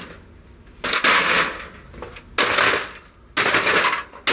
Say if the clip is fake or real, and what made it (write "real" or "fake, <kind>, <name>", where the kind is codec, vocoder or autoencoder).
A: real